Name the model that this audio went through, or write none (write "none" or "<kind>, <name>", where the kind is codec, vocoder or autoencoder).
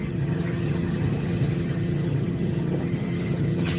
vocoder, HiFi-GAN